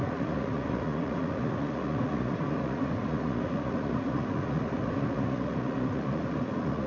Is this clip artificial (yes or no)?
yes